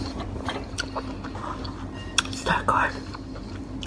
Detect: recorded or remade recorded